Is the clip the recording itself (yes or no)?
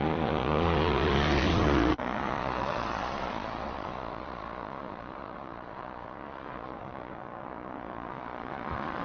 no